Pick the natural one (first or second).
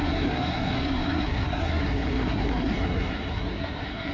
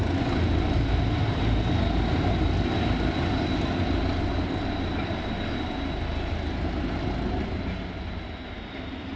second